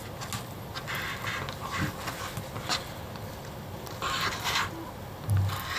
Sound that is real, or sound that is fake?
real